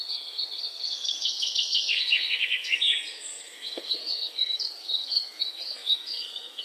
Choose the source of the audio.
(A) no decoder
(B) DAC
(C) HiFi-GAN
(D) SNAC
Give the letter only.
D